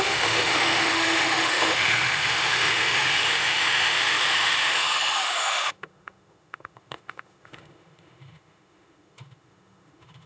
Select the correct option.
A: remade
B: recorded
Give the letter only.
A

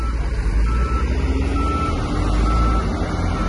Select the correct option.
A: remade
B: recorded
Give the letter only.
B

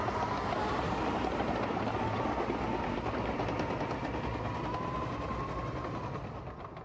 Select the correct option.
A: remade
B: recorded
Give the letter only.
B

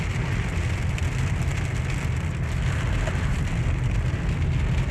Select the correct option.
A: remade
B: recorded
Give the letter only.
B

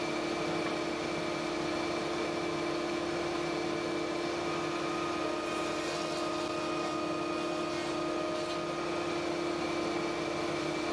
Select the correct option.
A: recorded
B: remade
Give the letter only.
A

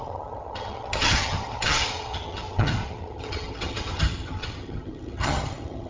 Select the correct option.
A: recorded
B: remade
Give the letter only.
B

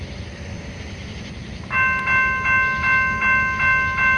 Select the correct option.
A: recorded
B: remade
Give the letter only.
A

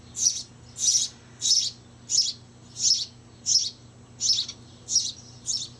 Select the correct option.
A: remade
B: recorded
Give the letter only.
B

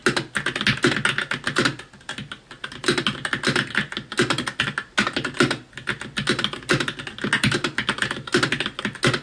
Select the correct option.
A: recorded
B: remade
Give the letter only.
A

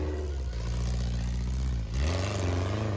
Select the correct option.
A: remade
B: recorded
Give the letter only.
B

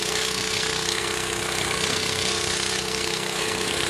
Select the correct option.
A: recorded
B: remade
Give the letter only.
B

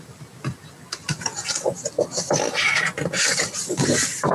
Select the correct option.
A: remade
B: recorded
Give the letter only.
B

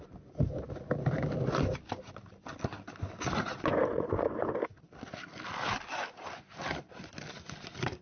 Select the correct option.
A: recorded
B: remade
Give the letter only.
A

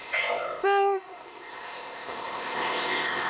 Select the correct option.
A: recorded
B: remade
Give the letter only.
B